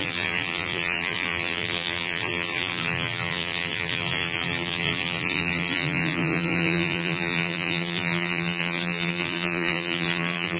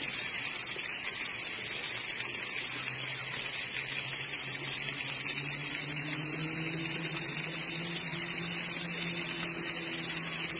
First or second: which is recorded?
second